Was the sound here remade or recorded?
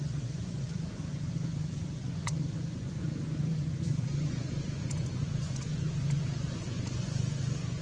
remade